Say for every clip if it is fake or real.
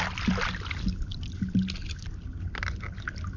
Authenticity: real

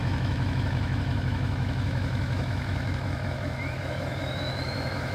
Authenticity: fake